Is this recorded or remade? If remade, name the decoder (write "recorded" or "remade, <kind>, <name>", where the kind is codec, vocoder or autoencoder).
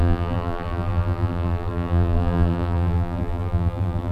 remade, vocoder, BigVGAN v2